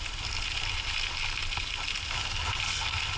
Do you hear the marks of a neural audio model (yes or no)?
no